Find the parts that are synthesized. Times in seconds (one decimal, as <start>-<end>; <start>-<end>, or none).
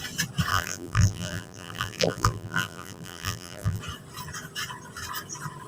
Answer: 0.5-3.8